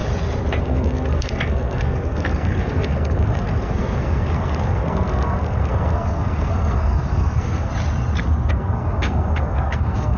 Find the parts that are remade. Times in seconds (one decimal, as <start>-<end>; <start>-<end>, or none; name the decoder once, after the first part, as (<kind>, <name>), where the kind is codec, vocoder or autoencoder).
0.6-7.7 (codec, SNAC); 8.5-10.2